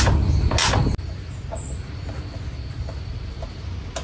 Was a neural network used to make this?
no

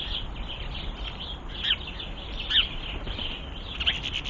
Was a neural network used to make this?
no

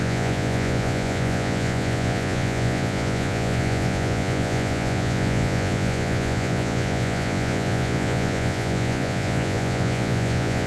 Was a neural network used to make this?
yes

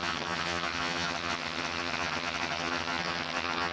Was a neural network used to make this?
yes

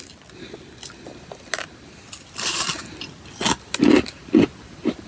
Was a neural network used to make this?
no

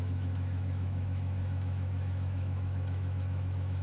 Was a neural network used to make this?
yes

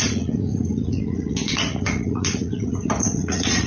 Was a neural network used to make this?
yes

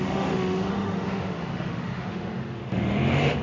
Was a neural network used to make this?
yes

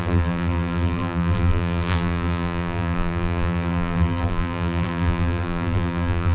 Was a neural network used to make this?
yes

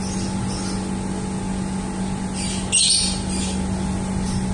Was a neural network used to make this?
no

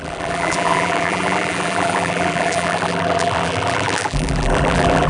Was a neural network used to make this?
yes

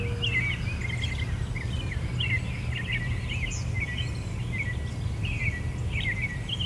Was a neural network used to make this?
no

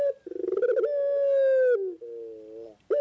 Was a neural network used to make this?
no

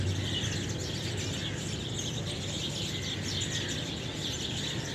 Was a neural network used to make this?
no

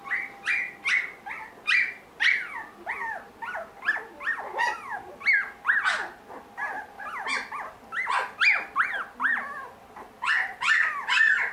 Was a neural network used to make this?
no